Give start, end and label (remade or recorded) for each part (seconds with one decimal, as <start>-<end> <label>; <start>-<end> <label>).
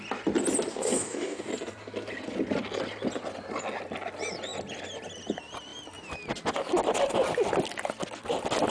0.0-0.7 recorded; 0.7-1.5 remade; 1.5-8.7 recorded